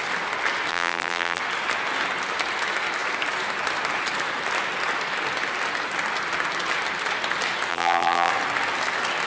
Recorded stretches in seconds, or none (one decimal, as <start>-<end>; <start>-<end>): 0.0-0.7; 1.4-7.7; 8.3-9.3